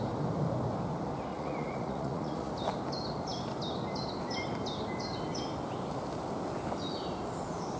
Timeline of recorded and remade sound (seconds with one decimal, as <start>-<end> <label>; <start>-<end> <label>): 0.0-1.3 recorded; 1.3-2.5 remade; 2.5-7.8 recorded